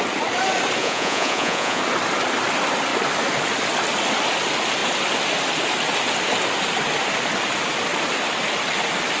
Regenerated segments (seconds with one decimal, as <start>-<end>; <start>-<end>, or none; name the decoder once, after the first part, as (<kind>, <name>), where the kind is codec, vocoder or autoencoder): 0.8-1.8 (vocoder, Vocos)